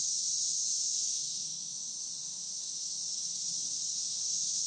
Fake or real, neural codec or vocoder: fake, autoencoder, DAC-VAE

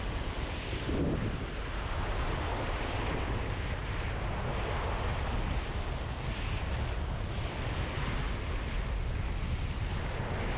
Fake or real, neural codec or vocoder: real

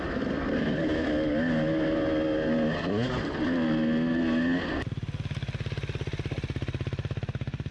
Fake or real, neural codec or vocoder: real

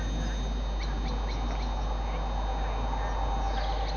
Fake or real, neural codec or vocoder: real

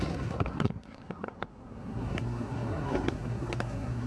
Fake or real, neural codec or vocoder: fake, codec, SNAC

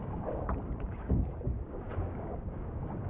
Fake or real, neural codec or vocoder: fake, codec, DAC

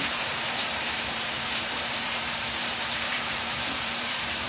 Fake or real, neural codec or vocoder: fake, vocoder, BigVGAN v2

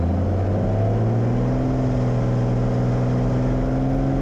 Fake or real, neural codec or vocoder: real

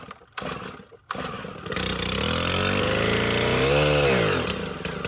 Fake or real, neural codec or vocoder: real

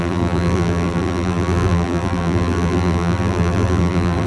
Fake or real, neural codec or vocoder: fake, vocoder, BigVGAN v2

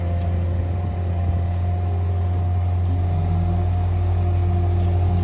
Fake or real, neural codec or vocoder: real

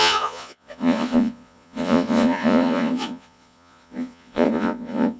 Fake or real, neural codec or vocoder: fake, vocoder, Vocos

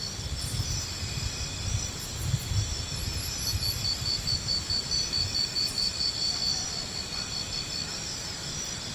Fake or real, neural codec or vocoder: real